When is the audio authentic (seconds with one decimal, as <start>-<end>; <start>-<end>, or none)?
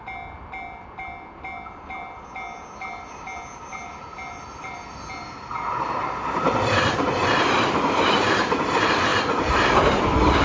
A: 0.0-10.4